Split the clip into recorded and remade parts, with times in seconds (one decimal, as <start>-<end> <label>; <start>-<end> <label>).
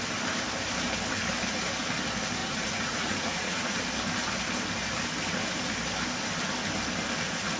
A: 0.0-2.4 recorded; 2.4-3.8 remade; 3.8-7.6 recorded